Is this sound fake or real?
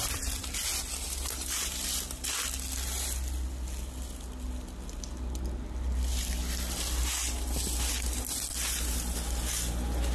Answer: real